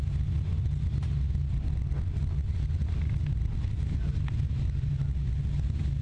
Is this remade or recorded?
recorded